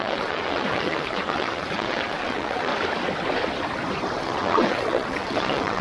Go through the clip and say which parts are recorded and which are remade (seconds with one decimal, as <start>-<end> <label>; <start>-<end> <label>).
0.0-2.7 remade; 2.7-4.2 recorded; 4.2-5.8 remade